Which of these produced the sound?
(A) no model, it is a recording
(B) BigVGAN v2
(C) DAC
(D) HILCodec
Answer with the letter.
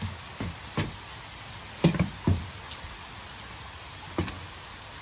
A